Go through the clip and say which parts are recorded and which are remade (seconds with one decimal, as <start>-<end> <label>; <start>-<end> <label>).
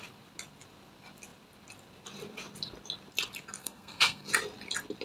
0.0-3.6 recorded; 3.6-4.3 remade; 4.3-5.0 recorded